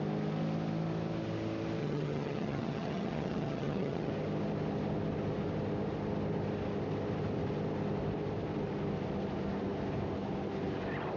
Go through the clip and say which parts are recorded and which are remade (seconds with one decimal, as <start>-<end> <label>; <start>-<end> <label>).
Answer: 0.0-1.8 recorded; 1.8-4.1 remade; 4.1-11.2 recorded